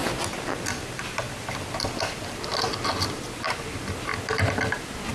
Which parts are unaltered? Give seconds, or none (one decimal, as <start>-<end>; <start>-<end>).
0.0-5.1